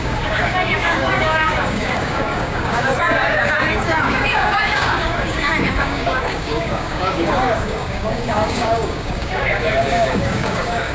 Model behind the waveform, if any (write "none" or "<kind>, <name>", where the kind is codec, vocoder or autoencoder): codec, DAC